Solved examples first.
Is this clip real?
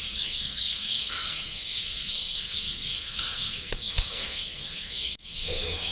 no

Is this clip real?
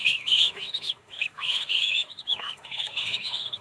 no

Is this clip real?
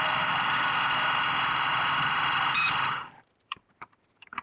no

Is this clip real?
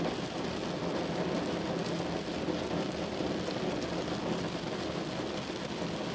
yes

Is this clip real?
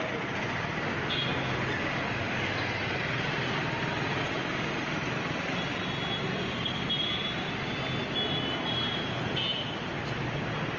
yes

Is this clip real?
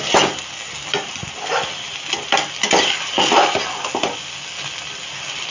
yes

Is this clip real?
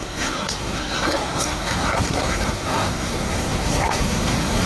no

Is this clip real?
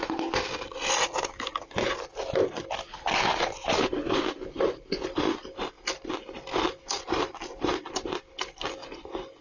yes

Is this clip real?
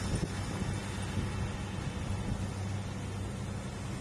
yes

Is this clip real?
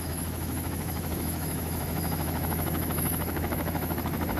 no